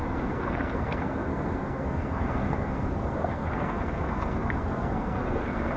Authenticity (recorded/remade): remade